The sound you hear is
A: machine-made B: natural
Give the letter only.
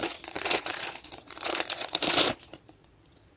A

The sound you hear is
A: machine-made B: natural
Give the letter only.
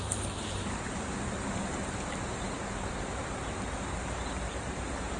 A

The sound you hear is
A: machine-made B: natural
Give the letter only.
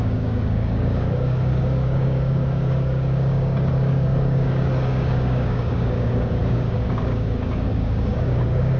A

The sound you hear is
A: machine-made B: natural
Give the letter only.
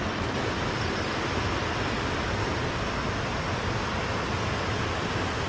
B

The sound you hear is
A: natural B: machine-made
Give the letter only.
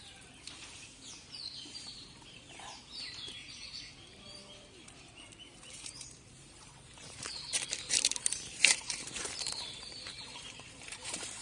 B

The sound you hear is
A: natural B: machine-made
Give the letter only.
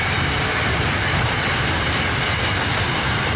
A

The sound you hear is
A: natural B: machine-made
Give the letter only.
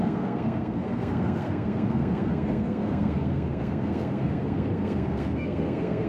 B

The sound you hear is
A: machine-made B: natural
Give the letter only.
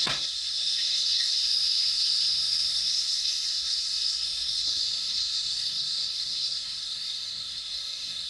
A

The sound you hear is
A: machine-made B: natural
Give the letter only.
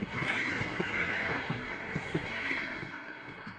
A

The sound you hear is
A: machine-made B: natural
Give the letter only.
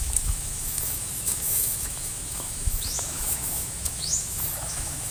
A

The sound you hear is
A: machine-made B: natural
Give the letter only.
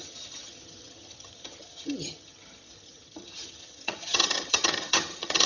A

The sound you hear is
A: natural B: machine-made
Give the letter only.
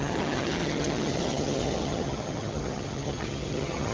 B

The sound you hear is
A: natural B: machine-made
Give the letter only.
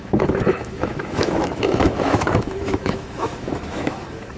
B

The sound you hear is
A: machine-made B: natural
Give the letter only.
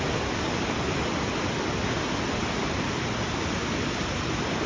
B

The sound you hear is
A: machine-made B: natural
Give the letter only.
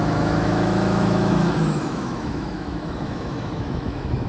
A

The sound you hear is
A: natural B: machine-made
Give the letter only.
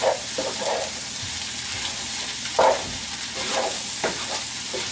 A